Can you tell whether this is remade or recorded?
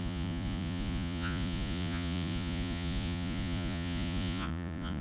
remade